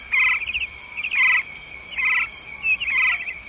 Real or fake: real